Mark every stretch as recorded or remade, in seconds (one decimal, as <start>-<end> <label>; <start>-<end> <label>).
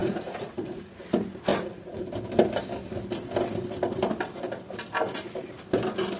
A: 0.0-1.1 remade; 1.1-1.5 recorded; 1.5-2.1 remade; 2.1-6.2 recorded